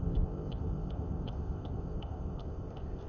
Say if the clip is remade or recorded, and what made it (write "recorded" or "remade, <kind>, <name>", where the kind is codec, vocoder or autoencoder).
remade, codec, ZipCodec